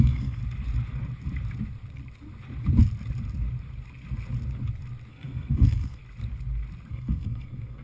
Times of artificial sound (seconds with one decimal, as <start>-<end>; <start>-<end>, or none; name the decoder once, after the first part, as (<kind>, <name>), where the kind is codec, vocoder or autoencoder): 0.0-0.4 (codec, SNAC); 5.1-6.0; 6.9-7.8